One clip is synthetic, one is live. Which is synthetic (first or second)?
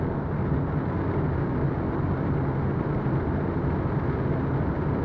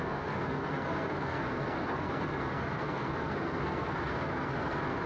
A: second